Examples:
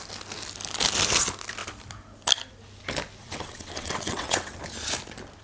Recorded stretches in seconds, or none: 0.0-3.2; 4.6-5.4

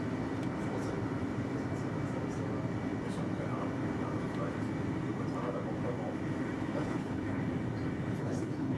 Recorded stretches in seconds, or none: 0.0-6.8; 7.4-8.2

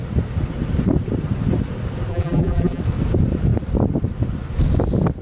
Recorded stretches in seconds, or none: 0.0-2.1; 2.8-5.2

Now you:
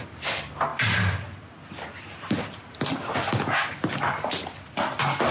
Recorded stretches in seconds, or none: 0.0-5.3

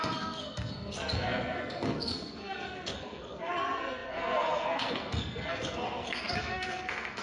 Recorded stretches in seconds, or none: none

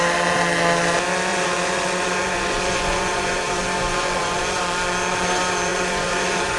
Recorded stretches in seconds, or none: 0.0-1.3; 4.6-5.7

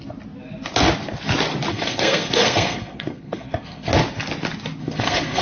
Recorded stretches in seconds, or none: 0.0-1.7; 3.9-4.8

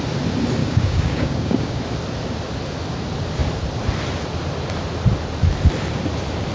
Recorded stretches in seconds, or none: 0.0-0.6; 1.8-6.5